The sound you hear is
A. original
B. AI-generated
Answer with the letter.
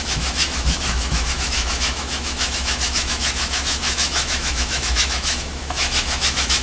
B